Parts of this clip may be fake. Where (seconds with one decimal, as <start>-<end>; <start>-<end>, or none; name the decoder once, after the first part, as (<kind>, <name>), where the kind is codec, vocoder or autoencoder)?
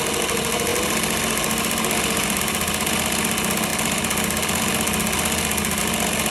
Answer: none